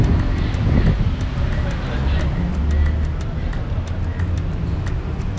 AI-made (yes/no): no